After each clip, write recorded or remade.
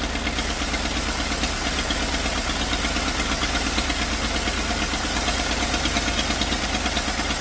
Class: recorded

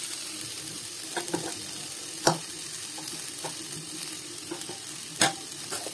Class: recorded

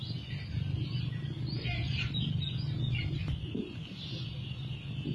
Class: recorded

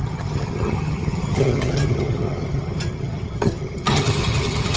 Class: remade